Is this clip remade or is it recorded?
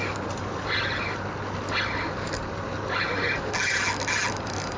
recorded